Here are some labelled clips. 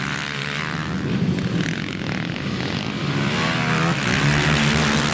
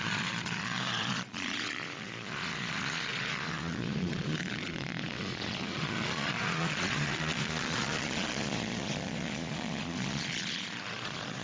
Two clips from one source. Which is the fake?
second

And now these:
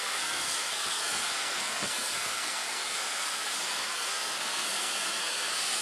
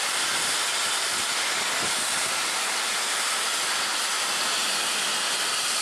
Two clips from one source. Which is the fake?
first